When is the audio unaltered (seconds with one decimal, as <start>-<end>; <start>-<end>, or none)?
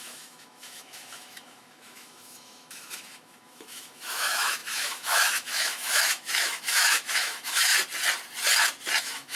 7.7-9.0